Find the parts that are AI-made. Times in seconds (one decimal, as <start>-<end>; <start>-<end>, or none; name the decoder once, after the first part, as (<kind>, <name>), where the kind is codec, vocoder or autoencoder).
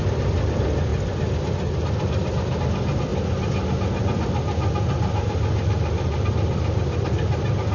none